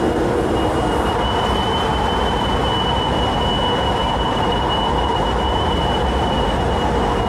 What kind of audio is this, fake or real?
real